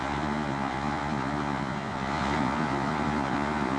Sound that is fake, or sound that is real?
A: fake